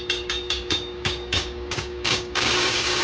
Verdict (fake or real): fake